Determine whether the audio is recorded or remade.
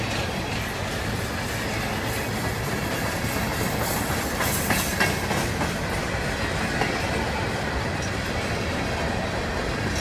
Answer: recorded